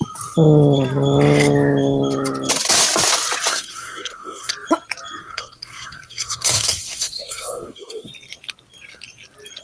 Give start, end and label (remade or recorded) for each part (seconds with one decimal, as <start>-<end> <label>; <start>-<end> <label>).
0.0-3.5 recorded; 3.5-4.5 remade; 4.5-5.2 recorded; 5.2-8.1 remade; 8.1-9.6 recorded